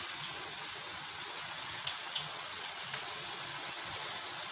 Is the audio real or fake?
fake